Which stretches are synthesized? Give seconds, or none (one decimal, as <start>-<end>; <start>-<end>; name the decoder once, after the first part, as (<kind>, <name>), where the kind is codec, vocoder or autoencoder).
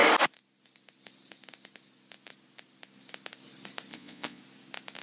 3.9-4.4 (vocoder, Vocos)